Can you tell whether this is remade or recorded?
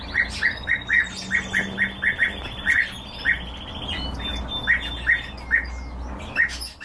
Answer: recorded